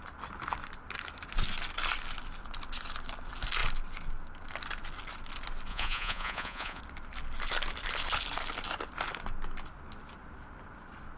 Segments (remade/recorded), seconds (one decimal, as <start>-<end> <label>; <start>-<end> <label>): 0.0-5.7 recorded; 5.7-6.8 remade; 6.8-11.2 recorded